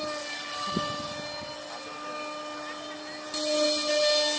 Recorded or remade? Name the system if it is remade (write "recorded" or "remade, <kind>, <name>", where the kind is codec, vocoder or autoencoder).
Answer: recorded